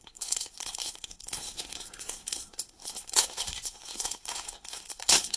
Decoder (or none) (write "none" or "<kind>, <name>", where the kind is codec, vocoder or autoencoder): codec, SNAC